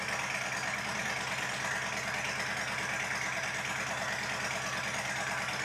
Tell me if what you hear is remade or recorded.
recorded